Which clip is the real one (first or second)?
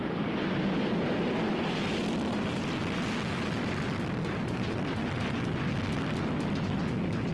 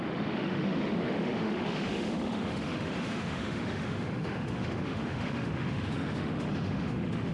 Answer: first